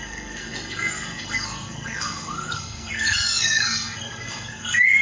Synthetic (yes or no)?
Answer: yes